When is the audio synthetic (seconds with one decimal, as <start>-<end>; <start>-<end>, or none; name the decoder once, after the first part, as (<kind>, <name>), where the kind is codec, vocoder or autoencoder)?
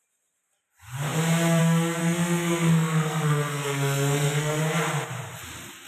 2.0-4.6 (codec, SNAC)